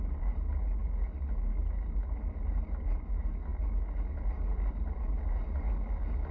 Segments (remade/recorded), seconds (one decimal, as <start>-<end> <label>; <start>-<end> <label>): 0.0-6.3 recorded